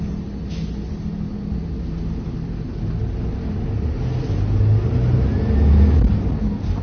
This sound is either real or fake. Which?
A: real